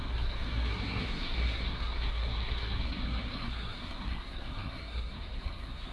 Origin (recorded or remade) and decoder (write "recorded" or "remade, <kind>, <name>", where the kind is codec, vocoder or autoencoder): remade, codec, SNAC